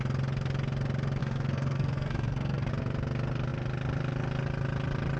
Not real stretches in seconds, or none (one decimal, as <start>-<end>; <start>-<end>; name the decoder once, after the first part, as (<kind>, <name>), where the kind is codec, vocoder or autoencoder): 1.2-2.7 (codec, SNAC)

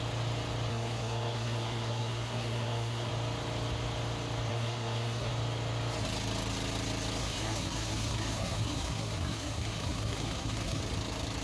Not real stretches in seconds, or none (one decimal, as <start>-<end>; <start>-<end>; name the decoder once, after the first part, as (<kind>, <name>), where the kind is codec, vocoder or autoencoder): 0.7-3.1 (codec, SNAC); 4.5-5.3; 7.2-10.8

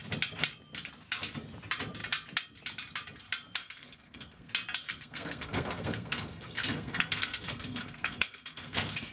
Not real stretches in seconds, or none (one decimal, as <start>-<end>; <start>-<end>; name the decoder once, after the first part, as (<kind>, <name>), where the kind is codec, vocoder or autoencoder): 3.6-4.5 (codec, SNAC); 4.9-9.1

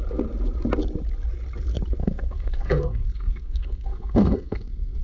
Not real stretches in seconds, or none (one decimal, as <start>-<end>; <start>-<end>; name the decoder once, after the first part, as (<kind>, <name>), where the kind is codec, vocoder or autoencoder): 2.0-5.0 (codec, SNAC)

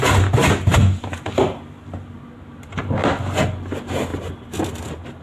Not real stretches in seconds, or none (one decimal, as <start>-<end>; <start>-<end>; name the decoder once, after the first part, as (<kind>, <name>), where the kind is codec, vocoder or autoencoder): none

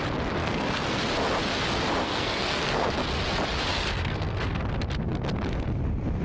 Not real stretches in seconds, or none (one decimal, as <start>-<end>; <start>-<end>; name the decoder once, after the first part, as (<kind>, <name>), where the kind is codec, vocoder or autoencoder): 0.4-1.0 (codec, SNAC); 2.0-2.9; 3.7-4.6